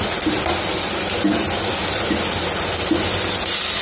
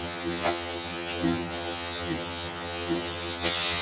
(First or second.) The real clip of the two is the first